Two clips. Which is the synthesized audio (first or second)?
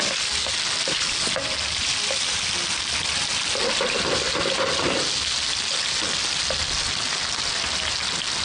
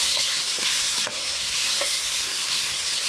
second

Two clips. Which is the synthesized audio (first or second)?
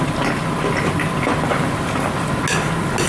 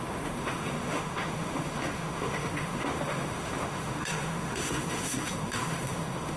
second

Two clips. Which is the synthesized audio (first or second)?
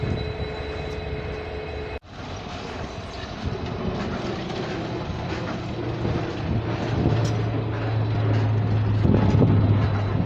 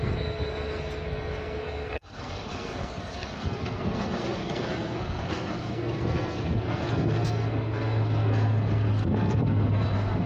second